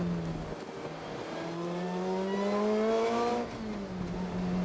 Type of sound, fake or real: real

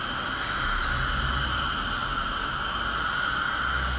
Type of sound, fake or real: real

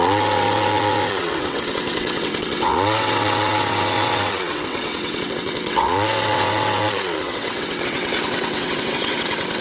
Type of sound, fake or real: fake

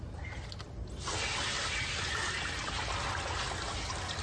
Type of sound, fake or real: real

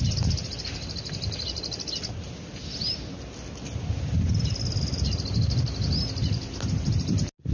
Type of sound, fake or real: real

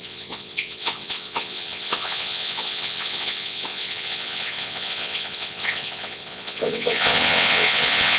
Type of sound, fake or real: fake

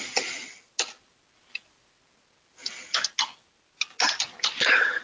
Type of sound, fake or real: real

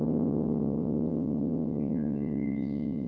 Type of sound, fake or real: fake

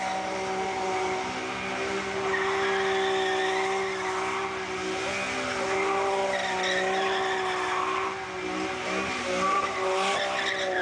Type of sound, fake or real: real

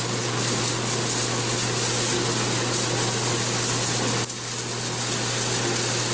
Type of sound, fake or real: real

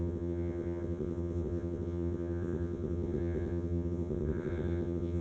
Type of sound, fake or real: fake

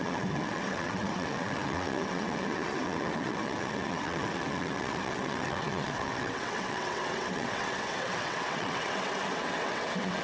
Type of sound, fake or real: fake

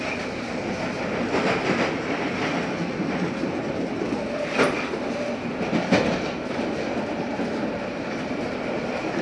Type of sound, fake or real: real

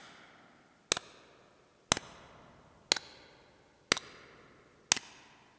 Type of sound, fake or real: real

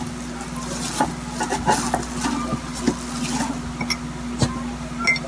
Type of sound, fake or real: real